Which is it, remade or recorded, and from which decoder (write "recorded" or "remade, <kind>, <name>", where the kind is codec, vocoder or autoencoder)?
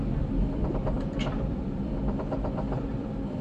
remade, vocoder, BigVGAN v2